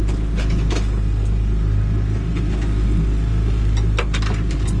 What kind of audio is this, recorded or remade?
recorded